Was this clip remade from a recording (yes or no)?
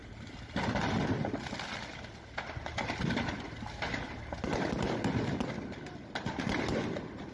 no